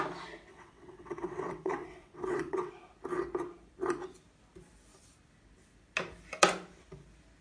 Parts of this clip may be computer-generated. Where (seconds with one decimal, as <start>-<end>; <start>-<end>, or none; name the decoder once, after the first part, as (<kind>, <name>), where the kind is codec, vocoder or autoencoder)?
0.5-2.7 (vocoder, WaveNeXt)